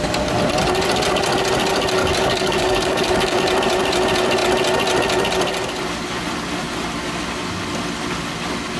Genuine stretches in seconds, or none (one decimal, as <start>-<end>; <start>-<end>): 0.0-2.0; 3.4-8.8